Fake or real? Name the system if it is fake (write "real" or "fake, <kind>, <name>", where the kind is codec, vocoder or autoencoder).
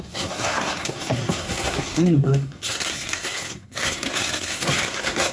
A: fake, codec, SNAC